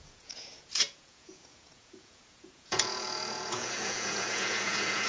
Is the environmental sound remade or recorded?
remade